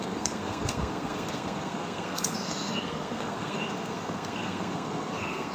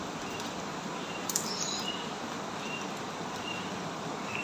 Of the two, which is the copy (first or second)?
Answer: first